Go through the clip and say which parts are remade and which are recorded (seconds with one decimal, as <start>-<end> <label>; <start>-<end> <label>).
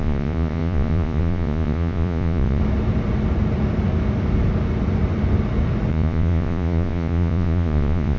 0.0-2.6 remade; 2.6-5.9 recorded; 5.9-8.2 remade